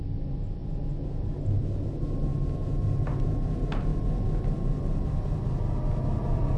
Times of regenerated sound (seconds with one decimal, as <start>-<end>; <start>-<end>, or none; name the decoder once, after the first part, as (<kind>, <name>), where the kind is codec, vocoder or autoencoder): none